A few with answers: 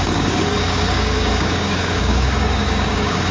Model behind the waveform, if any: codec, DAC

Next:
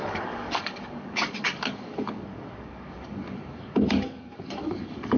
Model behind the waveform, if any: codec, DAC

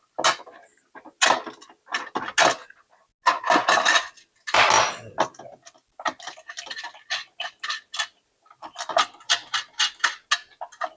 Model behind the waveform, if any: none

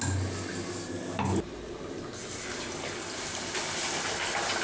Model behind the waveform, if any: none